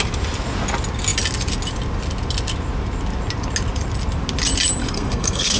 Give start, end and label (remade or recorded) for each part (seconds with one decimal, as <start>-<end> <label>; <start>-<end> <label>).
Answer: 0.0-4.8 recorded; 4.8-5.6 remade